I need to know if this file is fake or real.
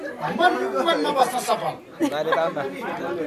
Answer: real